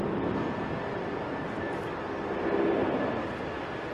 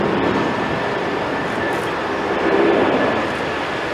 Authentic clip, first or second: first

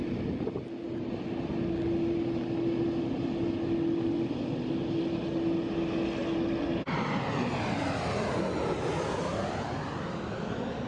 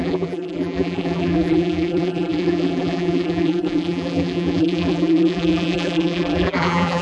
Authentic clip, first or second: first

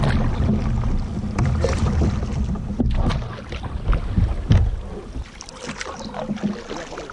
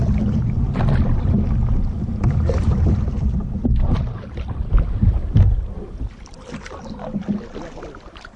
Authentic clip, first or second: first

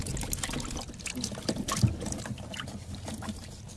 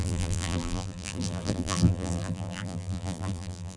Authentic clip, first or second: first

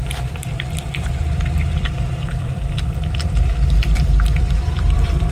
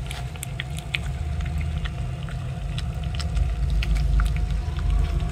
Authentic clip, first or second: second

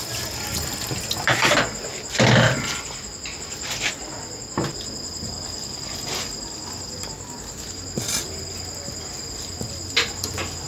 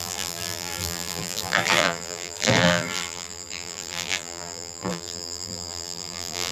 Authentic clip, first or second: first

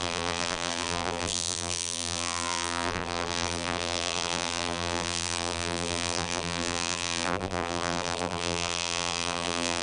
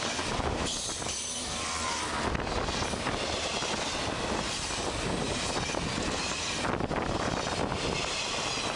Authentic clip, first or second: second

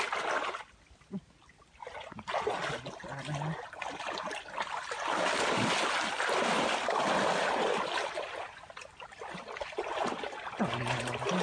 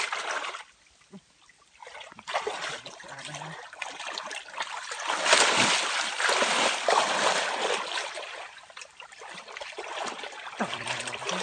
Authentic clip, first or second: first